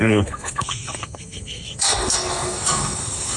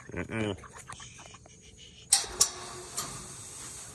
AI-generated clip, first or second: first